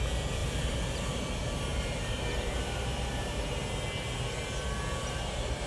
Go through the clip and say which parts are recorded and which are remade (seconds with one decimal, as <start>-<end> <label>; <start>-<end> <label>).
0.0-0.4 recorded; 0.4-1.2 remade; 1.2-1.7 recorded; 1.7-3.4 remade; 3.4-5.7 recorded